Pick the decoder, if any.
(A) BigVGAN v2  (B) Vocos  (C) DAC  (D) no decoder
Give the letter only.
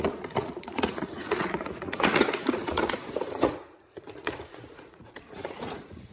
B